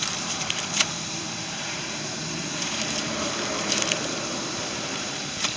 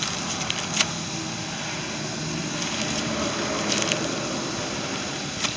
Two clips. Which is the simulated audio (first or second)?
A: first